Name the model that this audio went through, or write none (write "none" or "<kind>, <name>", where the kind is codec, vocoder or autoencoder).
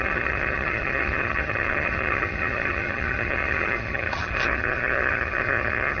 vocoder, HiFi-GAN